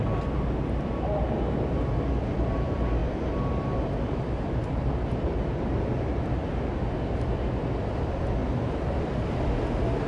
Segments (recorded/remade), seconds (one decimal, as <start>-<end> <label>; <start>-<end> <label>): 0.0-10.1 recorded

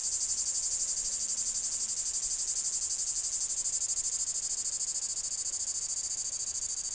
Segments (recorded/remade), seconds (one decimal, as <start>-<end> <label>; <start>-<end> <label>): 0.0-6.9 recorded

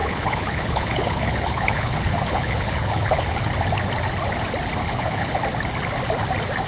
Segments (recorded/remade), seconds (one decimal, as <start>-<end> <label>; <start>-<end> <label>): 0.0-3.5 remade; 3.5-4.8 recorded; 4.8-5.4 remade; 5.4-6.7 recorded

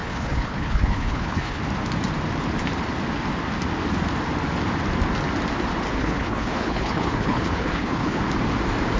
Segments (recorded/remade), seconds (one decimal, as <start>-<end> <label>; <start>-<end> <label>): 0.0-1.6 remade; 1.6-6.0 recorded; 6.0-8.2 remade; 8.2-9.0 recorded

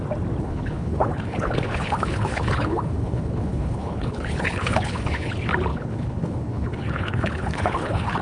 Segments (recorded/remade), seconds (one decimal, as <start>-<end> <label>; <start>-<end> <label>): 0.0-0.4 recorded; 0.4-5.3 remade; 5.3-5.7 recorded; 5.7-8.2 remade

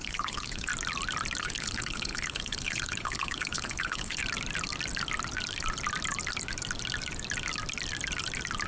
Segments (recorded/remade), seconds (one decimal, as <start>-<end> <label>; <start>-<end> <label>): 0.0-0.7 remade; 0.7-1.4 recorded; 1.4-4.2 remade; 4.2-8.7 recorded

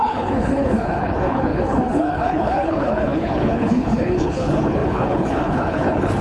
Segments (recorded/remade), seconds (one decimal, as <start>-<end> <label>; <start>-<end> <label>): 0.0-6.2 remade

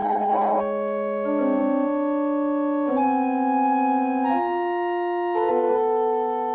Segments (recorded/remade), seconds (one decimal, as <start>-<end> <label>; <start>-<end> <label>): 0.0-0.6 remade; 0.6-6.5 recorded